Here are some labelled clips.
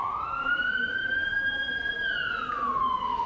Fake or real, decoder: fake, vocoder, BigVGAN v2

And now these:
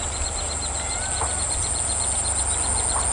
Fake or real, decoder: real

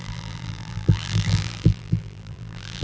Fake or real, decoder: fake, vocoder, BigVGAN v2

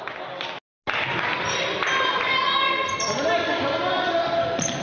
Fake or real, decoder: real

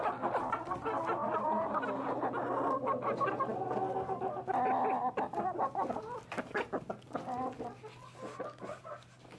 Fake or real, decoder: real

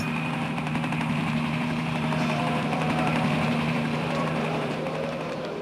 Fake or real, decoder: fake, vocoder, BigVGAN v2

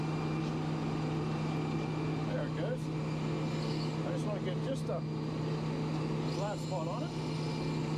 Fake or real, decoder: real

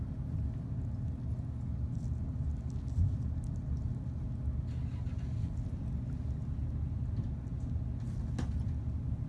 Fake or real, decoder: real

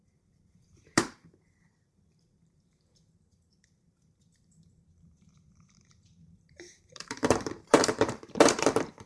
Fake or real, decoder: fake, vocoder, BigVGAN v2